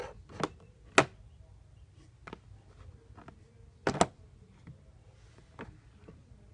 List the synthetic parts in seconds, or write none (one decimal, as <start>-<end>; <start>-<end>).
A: none